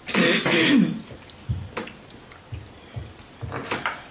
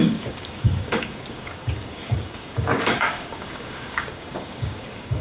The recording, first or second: first